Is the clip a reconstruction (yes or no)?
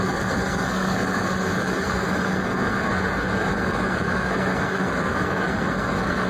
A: yes